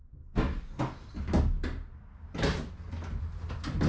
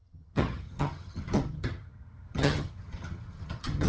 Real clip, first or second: first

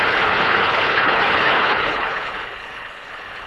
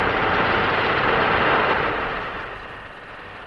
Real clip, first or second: second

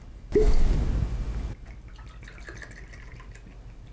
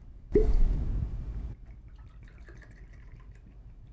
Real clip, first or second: first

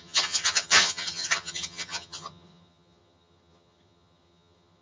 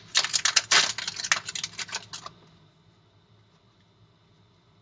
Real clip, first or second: second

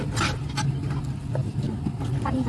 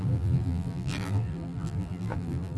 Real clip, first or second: first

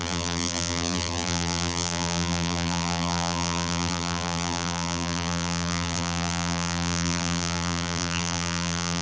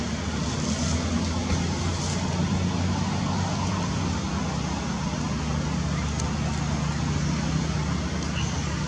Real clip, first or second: second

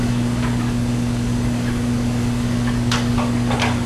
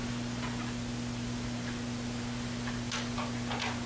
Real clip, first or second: second